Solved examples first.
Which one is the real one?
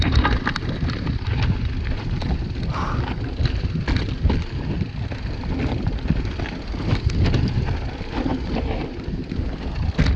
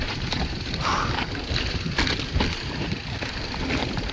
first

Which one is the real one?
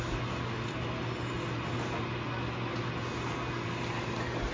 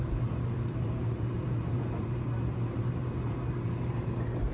first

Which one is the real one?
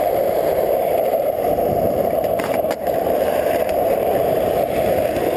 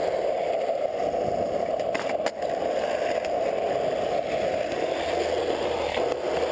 second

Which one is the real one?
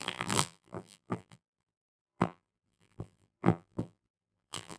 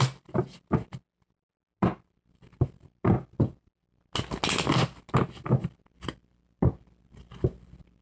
second